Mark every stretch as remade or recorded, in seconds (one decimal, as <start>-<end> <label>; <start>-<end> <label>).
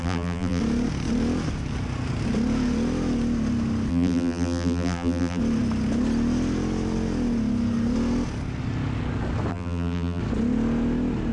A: 0.0-0.6 remade; 0.6-3.9 recorded; 3.9-5.4 remade; 5.4-9.5 recorded; 9.5-10.2 remade; 10.2-11.3 recorded